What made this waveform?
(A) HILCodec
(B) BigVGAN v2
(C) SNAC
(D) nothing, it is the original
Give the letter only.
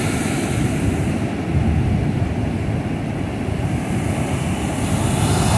D